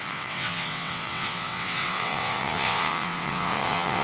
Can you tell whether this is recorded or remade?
remade